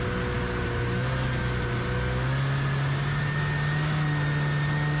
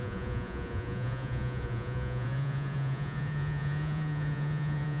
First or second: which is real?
first